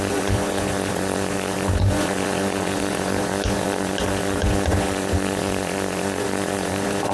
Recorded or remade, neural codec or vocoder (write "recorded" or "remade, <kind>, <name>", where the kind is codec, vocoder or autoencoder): remade, vocoder, Vocos